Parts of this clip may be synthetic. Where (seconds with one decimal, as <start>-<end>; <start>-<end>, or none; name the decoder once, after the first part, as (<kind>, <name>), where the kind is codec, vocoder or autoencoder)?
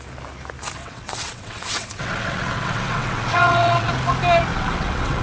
0.8-3.9 (vocoder, WaveNeXt); 4.5-5.2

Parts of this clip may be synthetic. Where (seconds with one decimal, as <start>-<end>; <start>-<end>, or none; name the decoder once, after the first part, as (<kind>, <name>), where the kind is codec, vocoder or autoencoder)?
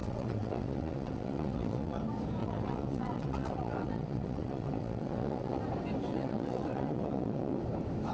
0.0-2.0 (vocoder, WaveNeXt); 2.4-5.6; 6.1-7.6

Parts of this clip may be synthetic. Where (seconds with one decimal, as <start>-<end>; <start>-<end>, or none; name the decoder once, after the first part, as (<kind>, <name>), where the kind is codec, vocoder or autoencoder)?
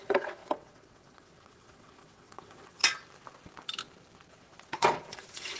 0.0-2.8 (vocoder, WaveNeXt); 4.3-5.6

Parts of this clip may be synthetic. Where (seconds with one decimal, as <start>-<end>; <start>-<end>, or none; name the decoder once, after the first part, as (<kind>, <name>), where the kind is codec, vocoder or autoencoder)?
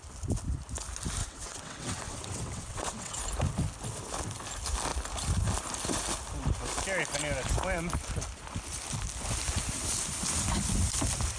1.2-3.2 (vocoder, WaveNeXt)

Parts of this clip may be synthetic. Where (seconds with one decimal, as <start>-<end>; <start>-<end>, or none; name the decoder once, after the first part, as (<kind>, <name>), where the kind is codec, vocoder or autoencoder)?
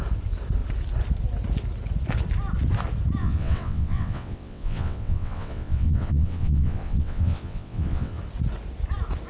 3.2-8.2 (vocoder, WaveNeXt)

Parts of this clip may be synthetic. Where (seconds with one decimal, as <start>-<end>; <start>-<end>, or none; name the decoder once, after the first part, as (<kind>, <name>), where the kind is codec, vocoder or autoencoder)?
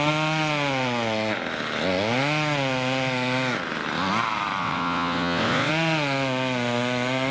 4.6-5.7 (vocoder, WaveNeXt)